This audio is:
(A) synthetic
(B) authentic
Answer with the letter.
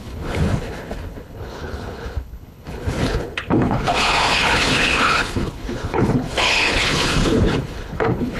A